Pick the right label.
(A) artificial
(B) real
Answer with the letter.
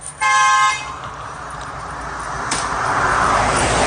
A